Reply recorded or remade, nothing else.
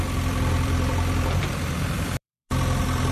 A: remade